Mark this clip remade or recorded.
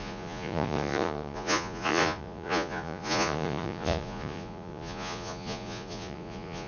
remade